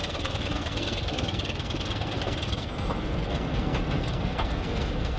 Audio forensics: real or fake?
fake